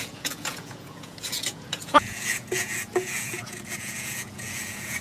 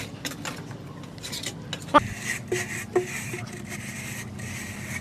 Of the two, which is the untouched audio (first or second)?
second